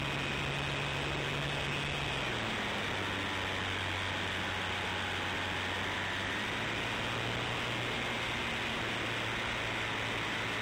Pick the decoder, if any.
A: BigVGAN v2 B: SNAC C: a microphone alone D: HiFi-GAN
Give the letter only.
C